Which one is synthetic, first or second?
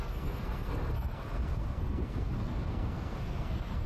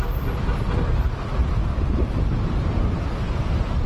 first